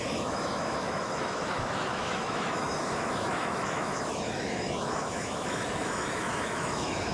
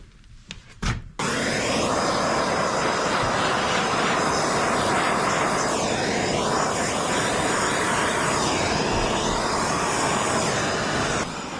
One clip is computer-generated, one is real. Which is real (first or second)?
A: second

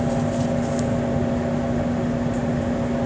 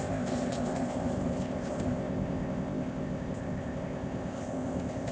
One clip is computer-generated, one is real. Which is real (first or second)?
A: first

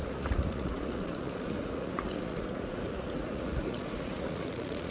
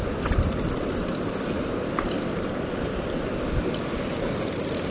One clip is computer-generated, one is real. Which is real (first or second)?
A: second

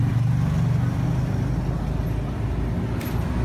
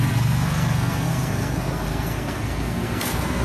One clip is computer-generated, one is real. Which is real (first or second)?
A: first